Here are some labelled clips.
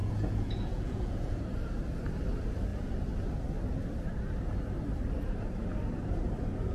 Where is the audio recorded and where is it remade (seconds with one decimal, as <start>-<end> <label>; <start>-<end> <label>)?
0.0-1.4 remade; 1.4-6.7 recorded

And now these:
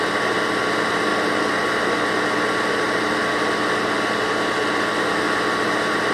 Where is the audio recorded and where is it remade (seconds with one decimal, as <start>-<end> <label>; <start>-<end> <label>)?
0.0-6.1 recorded

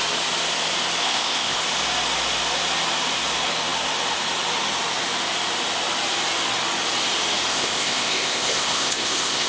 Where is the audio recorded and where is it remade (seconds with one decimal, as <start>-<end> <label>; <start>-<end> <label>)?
0.0-1.0 recorded; 1.0-1.6 remade; 1.6-7.5 recorded; 7.5-9.5 remade

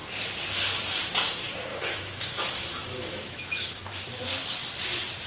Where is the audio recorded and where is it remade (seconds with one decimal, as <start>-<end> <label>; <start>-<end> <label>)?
0.0-1.7 recorded; 1.7-4.3 remade; 4.3-5.3 recorded

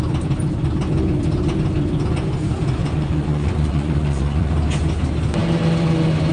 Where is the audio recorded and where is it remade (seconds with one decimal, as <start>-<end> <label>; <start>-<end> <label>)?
0.0-2.8 recorded; 2.8-4.5 remade; 4.5-6.3 recorded